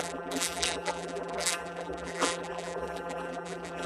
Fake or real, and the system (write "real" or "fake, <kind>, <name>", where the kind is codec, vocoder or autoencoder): fake, vocoder, BigVGAN v2